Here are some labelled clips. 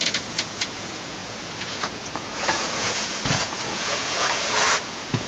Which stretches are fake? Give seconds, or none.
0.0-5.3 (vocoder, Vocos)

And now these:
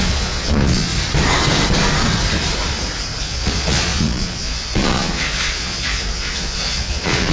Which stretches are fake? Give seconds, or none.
0.0-0.9 (vocoder, Vocos); 3.2-7.3